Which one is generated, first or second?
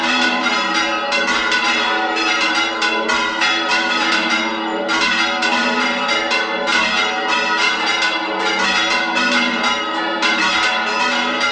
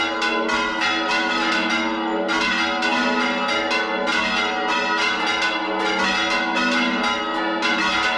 first